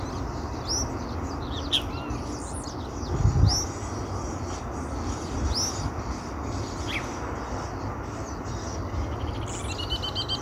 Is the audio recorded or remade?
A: recorded